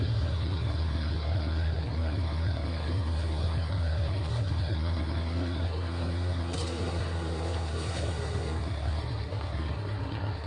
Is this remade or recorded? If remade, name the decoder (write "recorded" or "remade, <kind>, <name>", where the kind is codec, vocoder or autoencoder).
remade, codec, SNAC